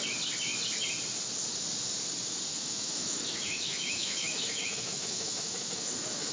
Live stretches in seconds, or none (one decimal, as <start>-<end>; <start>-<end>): 0.0-2.5